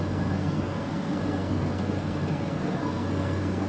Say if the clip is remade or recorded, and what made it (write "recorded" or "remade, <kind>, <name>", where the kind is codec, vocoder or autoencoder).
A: remade, codec, SNAC